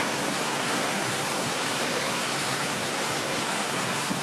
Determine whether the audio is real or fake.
fake